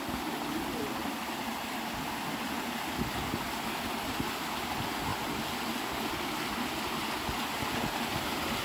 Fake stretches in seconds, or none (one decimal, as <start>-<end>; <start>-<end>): none